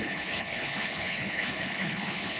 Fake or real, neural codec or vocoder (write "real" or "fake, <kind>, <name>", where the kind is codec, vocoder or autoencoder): fake, codec, HILCodec